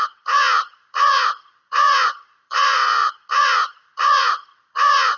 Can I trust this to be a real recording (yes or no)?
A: no